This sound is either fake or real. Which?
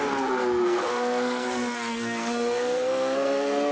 fake